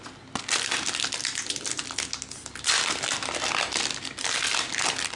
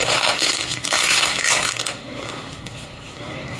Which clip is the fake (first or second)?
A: second